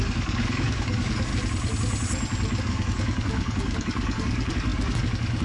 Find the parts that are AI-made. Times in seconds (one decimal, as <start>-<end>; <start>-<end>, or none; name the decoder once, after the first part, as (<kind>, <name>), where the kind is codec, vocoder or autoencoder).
0.0-1.3 (codec, DAC); 2.6-5.4